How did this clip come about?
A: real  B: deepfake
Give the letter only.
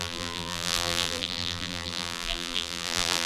B